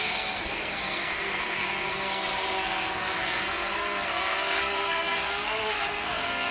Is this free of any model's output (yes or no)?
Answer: no